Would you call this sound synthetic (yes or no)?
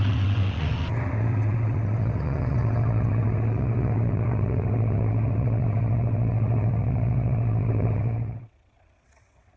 yes